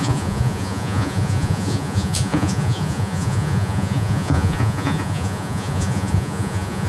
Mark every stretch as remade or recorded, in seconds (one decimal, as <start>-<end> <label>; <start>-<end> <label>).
0.0-6.9 remade

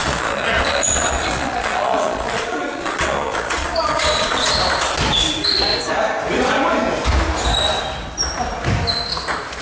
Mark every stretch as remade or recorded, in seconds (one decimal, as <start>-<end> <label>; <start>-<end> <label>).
0.0-4.5 remade; 4.5-9.6 recorded

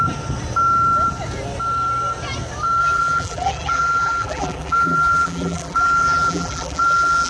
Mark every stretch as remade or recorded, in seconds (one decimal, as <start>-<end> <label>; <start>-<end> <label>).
0.0-2.8 recorded; 2.8-7.3 remade

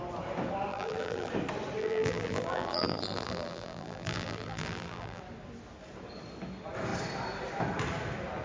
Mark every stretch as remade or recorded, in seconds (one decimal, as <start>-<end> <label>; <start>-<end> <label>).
0.0-0.7 recorded; 0.7-1.3 remade; 1.3-1.8 recorded; 1.8-5.2 remade; 5.2-8.4 recorded

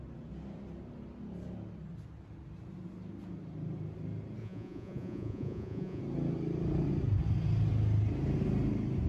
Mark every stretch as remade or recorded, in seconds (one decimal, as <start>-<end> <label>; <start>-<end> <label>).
0.0-4.4 recorded; 4.4-6.0 remade; 6.0-9.1 recorded

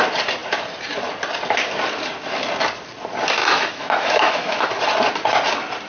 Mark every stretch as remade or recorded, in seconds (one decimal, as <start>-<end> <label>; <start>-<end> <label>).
0.0-3.4 recorded; 3.4-4.7 remade; 4.7-5.9 recorded